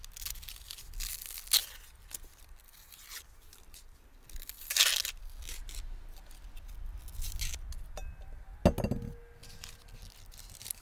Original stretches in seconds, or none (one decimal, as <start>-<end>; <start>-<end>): 0.0-10.8